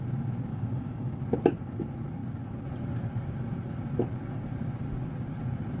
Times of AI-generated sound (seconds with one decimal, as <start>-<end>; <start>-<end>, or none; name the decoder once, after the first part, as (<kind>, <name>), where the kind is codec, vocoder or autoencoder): 0.5-1.2 (codec, DAC)